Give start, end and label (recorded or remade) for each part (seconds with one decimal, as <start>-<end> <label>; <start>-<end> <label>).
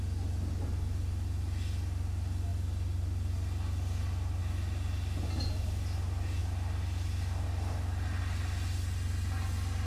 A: 0.0-9.9 recorded